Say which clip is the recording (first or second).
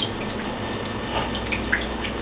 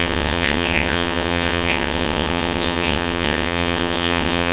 first